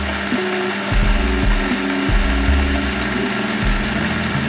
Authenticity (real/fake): real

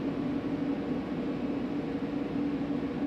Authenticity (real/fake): real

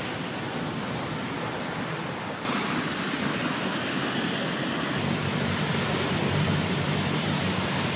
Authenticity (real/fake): real